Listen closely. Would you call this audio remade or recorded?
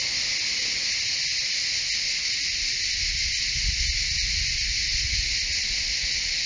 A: recorded